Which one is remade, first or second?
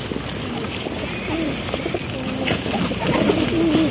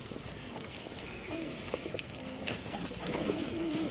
second